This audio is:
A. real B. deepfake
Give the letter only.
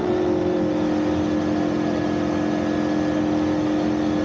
A